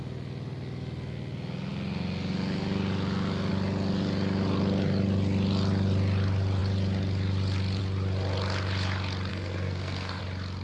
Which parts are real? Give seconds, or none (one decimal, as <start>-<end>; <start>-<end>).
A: 0.0-9.3; 10.2-10.6